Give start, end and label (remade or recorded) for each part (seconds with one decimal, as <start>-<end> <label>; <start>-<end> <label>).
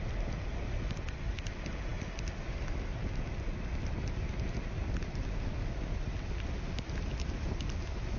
0.0-8.2 recorded